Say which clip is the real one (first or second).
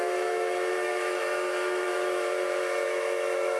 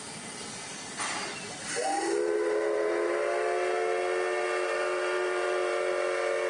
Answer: second